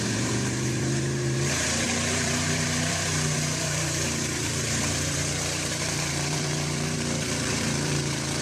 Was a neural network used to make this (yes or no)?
yes